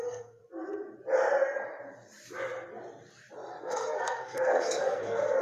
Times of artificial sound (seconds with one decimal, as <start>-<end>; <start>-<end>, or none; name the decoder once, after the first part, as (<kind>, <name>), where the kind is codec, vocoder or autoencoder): 0.0-0.4 (codec, SNAC); 3.6-5.4